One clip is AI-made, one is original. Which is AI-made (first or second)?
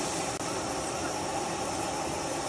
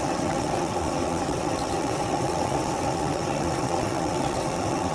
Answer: second